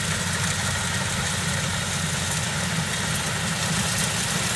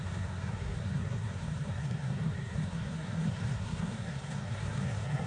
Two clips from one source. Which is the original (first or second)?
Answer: first